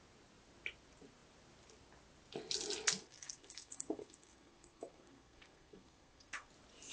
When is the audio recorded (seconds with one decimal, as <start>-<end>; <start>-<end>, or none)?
0.0-3.0; 6.5-6.9